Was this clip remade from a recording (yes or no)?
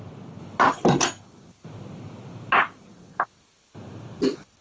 no